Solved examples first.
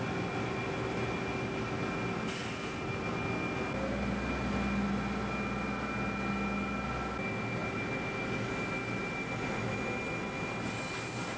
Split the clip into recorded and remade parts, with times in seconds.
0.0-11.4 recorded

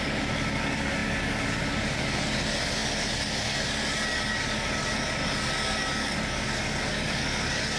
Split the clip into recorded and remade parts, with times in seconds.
0.0-7.8 remade